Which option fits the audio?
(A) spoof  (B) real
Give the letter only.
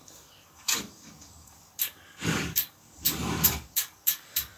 A